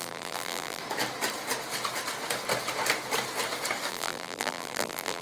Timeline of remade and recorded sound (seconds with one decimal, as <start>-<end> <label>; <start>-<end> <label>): 0.0-0.8 remade; 0.8-3.9 recorded; 3.9-5.2 remade